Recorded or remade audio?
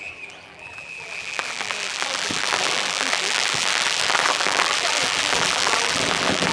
remade